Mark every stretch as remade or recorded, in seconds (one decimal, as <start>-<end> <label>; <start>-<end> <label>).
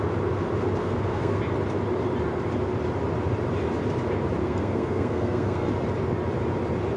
0.0-0.8 recorded; 0.8-1.4 remade; 1.4-4.4 recorded; 4.4-5.7 remade; 5.7-7.0 recorded